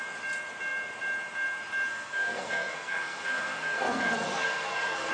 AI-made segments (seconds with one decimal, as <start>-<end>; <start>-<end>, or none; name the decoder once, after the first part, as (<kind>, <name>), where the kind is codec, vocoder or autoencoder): 1.9-5.1 (codec, SNAC)